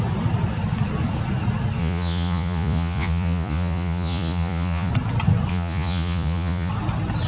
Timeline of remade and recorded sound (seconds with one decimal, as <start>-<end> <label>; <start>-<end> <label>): 0.0-1.8 recorded; 1.8-4.9 remade; 4.9-5.5 recorded; 5.5-6.7 remade; 6.7-7.3 recorded